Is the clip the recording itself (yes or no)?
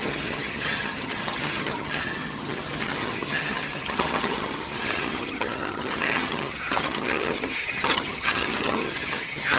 no